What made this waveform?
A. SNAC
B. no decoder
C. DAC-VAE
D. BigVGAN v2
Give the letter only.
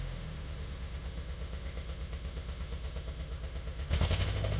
C